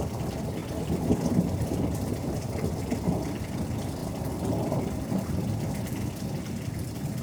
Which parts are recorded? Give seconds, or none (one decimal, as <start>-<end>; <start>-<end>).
0.0-0.6; 2.6-4.0; 5.7-7.2